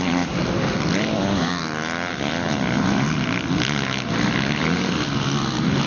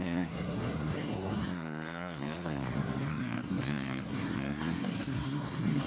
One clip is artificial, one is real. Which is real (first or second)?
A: first